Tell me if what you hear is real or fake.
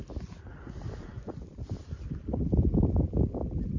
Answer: real